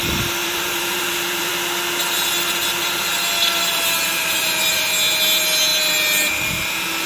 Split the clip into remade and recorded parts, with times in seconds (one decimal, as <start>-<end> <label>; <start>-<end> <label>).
0.0-0.4 recorded; 0.4-1.5 remade; 1.5-3.6 recorded; 3.6-4.8 remade; 4.8-7.1 recorded